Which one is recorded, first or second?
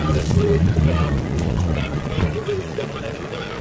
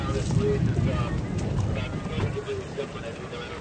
second